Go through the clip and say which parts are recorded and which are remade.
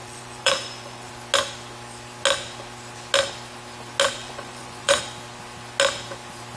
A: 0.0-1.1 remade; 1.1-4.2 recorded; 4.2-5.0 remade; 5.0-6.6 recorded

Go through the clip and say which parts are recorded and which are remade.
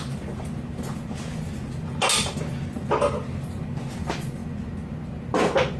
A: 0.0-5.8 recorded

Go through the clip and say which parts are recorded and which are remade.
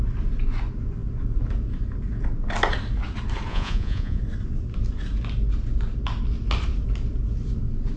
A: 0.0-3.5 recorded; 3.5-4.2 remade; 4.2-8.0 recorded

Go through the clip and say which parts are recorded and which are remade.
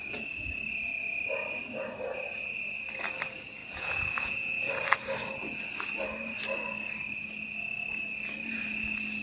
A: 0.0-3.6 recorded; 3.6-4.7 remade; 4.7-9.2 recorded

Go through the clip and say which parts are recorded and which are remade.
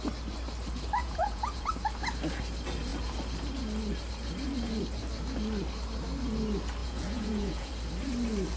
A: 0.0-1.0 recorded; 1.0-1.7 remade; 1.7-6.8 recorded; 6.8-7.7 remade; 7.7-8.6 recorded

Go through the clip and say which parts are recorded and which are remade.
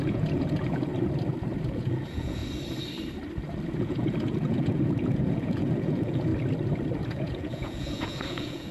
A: 0.0-0.9 remade; 0.9-1.7 recorded; 1.7-2.4 remade; 2.4-3.7 recorded; 3.7-6.3 remade; 6.3-7.0 recorded; 7.0-8.7 remade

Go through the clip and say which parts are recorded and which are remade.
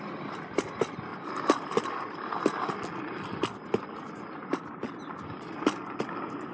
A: 0.0-6.5 recorded